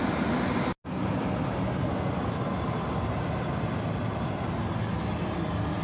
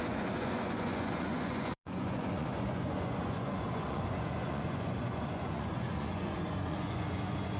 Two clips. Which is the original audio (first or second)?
first